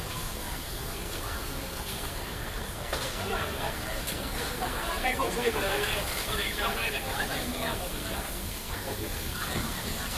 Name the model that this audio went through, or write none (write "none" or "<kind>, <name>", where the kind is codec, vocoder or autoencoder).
codec, SNAC